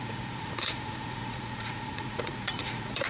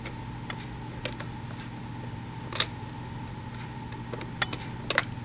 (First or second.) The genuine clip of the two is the second